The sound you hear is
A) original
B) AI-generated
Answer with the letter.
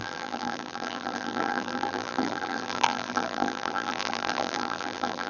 B